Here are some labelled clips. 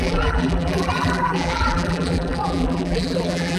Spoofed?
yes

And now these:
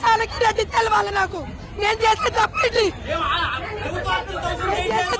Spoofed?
no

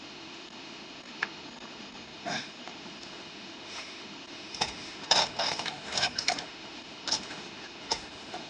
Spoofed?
yes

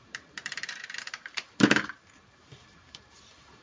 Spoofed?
yes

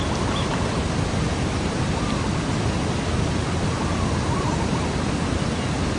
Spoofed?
no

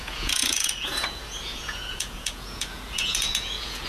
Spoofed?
yes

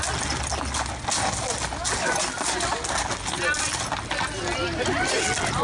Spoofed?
no